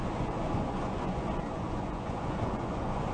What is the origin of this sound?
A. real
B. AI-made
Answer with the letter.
B